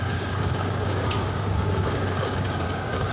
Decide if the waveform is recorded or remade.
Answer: remade